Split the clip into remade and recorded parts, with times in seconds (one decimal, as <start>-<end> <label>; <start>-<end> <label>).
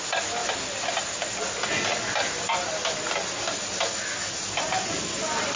0.0-5.6 recorded